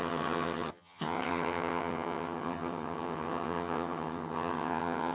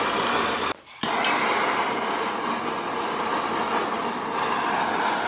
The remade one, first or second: first